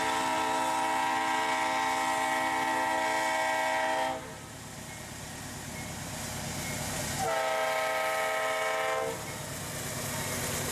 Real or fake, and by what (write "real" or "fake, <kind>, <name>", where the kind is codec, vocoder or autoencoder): real